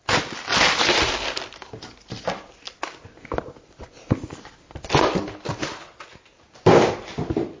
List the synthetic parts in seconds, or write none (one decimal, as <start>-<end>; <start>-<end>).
0.5-5.0